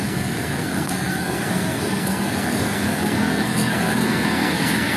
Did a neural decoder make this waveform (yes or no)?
yes